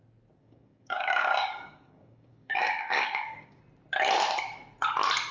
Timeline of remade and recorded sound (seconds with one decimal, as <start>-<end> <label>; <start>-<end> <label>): 0.0-0.4 recorded; 0.4-3.6 remade; 3.6-5.3 recorded